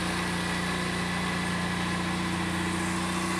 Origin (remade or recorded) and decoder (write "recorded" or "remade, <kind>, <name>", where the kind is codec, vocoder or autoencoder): recorded